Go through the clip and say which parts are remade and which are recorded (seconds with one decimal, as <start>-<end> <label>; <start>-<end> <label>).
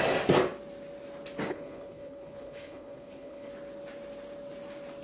0.0-1.5 recorded; 1.5-3.5 remade; 3.5-5.0 recorded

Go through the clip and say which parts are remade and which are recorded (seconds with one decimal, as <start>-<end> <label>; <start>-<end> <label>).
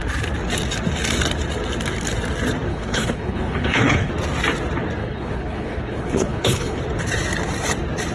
0.0-2.7 recorded; 2.7-4.1 remade; 4.1-5.0 recorded; 5.0-6.8 remade; 6.8-8.1 recorded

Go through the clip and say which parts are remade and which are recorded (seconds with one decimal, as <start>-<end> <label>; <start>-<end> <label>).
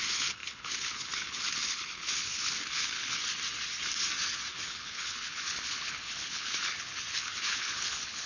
0.0-3.2 remade; 3.2-4.5 recorded; 4.5-8.3 remade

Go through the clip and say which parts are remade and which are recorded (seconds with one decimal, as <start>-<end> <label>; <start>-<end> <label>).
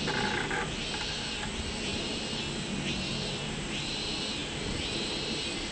0.0-5.7 recorded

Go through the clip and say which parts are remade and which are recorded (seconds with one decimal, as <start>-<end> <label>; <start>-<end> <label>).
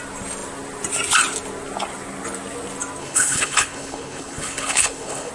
0.0-3.0 recorded; 3.0-5.3 remade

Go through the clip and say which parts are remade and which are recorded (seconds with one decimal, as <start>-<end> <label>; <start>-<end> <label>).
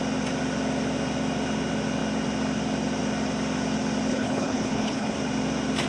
0.0-4.1 recorded; 4.1-5.2 remade; 5.2-5.9 recorded